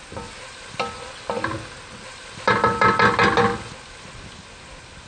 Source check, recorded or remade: recorded